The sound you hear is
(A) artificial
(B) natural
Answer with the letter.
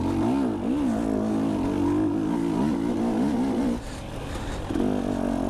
B